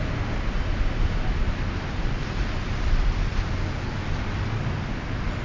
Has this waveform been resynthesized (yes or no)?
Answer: no